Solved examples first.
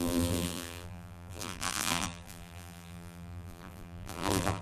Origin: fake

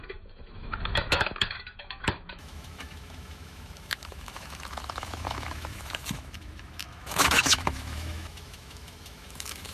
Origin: fake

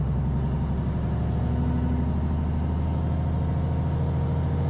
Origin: real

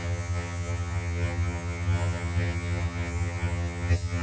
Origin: fake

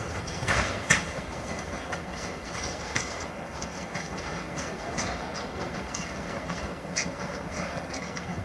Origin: fake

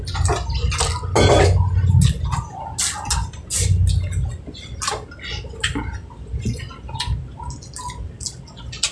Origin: real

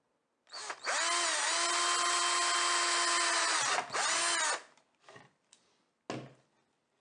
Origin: real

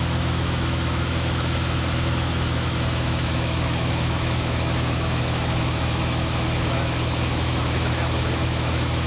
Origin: fake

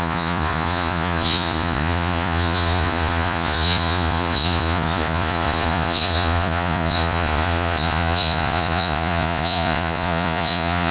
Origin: fake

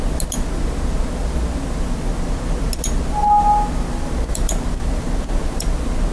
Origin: real